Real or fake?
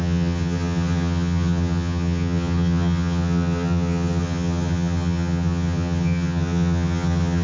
fake